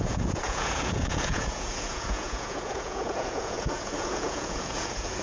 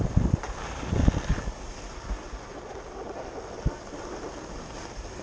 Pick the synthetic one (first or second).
first